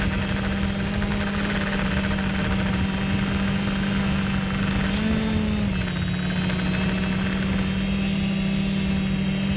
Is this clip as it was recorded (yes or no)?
yes